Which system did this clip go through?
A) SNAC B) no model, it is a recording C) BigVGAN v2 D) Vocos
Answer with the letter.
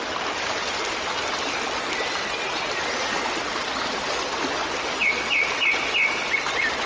B